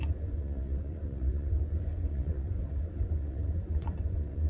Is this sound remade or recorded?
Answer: remade